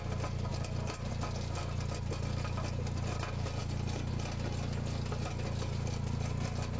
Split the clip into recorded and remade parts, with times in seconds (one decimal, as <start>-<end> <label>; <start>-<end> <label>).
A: 0.0-6.8 recorded